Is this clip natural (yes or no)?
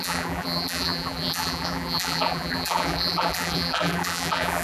no